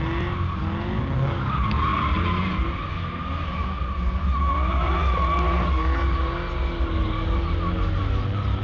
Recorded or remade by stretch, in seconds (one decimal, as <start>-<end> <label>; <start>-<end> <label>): 0.0-8.6 recorded